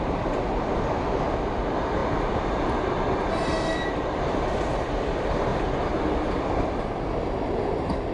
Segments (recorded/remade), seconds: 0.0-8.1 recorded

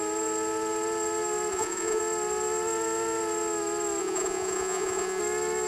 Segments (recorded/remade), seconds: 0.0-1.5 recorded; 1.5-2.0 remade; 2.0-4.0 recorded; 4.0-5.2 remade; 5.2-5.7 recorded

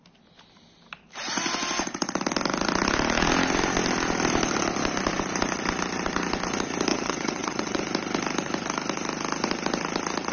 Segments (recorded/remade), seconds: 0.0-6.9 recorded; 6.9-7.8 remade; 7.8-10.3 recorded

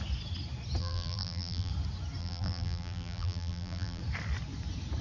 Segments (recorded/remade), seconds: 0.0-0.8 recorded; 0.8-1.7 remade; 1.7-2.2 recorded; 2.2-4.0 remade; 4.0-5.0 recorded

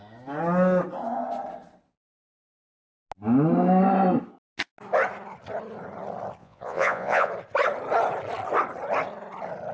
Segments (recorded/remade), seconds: 0.0-6.4 recorded; 6.4-7.3 remade; 7.3-9.7 recorded

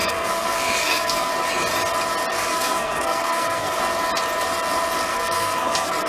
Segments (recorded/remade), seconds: 0.0-1.3 remade; 1.3-2.3 recorded; 2.3-3.8 remade; 3.8-5.1 recorded; 5.1-6.1 remade

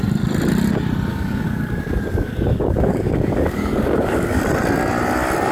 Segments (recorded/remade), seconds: 0.0-1.1 recorded; 1.1-4.4 remade; 4.4-5.5 recorded

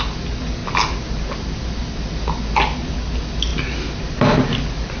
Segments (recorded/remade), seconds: 0.0-5.0 recorded